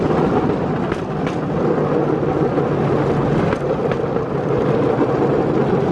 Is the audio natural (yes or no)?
yes